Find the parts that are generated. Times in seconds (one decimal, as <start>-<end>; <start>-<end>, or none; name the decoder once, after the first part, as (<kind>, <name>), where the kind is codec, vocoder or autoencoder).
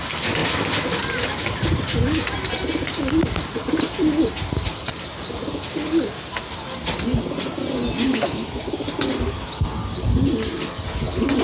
8.1-8.6 (autoencoder, DAC-VAE)